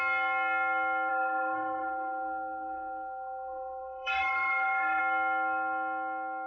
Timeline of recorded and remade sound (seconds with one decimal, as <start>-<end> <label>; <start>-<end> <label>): 0.0-1.1 recorded; 1.1-5.0 remade; 5.0-6.5 recorded